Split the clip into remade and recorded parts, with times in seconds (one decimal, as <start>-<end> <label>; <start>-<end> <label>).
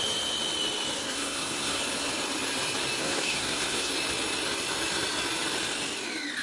0.0-1.0 recorded; 1.0-1.8 remade; 1.8-3.0 recorded; 3.0-3.9 remade; 3.9-6.4 recorded